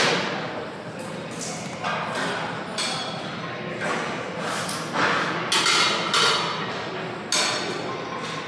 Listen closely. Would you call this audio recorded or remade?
recorded